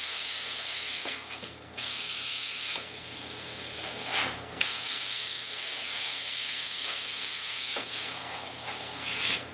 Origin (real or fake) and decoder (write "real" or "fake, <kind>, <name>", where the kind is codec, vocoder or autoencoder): fake, codec, SNAC